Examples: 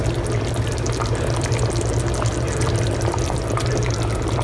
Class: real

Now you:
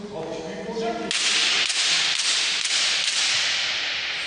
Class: real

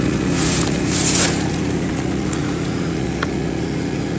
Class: fake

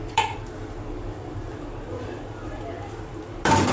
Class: fake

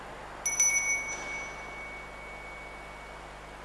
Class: real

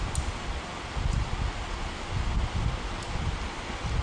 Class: real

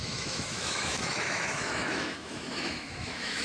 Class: fake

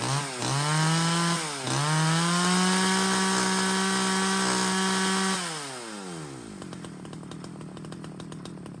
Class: real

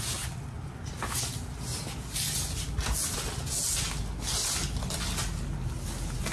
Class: real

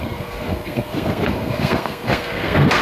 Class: fake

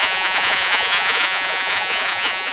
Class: fake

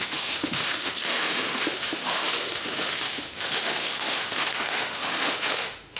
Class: fake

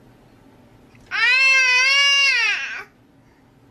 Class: real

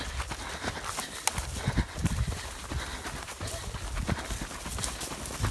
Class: real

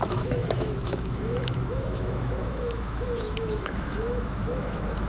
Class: fake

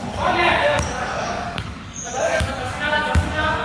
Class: fake